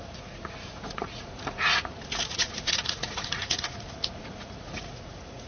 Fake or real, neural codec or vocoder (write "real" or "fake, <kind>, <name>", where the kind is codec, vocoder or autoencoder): fake, vocoder, Vocos